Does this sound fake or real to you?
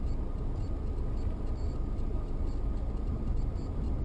fake